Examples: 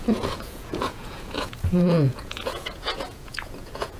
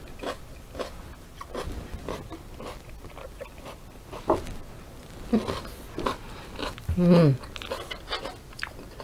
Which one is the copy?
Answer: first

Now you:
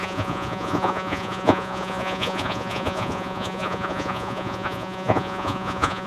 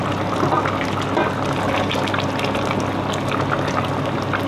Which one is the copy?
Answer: first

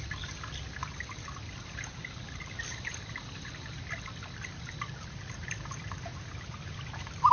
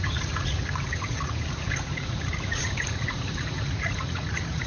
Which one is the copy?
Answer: second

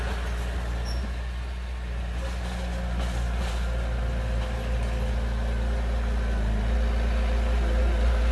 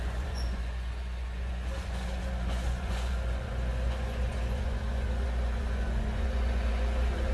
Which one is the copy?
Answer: second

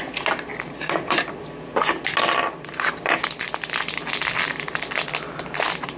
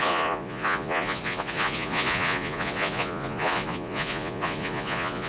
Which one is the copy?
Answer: second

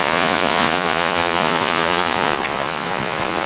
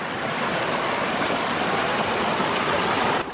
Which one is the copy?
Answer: first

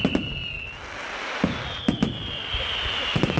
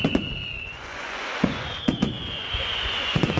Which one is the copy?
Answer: second